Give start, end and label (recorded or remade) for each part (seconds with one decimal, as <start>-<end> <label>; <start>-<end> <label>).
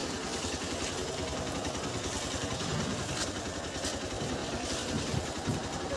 0.0-3.6 remade; 3.6-4.4 recorded; 4.4-6.0 remade